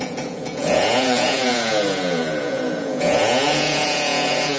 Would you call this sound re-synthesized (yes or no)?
yes